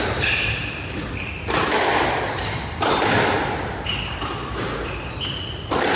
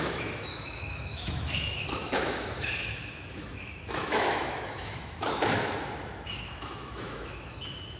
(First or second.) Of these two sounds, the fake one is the second